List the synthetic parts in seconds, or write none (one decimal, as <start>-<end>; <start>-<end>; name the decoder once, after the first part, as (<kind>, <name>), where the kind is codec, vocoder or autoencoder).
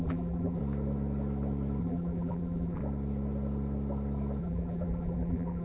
0.0-0.6 (vocoder, BigVGAN v2); 1.8-2.8; 4.4-5.6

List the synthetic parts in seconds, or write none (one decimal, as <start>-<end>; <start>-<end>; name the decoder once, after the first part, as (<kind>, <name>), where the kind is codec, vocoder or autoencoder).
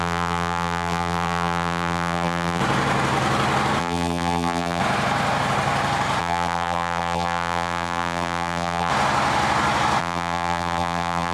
0.0-2.6 (vocoder, BigVGAN v2); 3.8-4.8; 6.2-8.9; 10.0-11.3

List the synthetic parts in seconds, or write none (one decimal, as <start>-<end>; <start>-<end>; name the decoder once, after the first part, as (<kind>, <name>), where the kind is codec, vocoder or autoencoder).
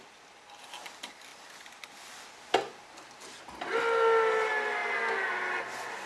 none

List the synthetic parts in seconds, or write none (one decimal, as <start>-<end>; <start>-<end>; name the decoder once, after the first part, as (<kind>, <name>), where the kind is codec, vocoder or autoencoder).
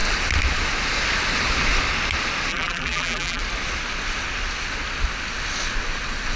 2.5-3.4 (vocoder, BigVGAN v2)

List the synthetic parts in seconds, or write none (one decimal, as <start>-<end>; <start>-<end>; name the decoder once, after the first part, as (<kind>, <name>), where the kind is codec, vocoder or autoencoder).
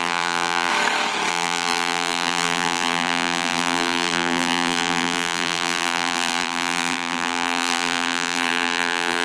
0.0-0.7 (vocoder, BigVGAN v2); 1.3-9.2